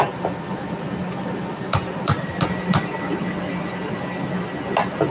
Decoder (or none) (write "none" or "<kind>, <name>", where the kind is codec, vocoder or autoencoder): none